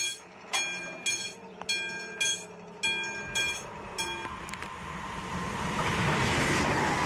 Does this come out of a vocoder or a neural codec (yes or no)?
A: no